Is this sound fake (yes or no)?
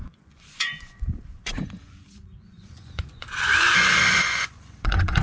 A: yes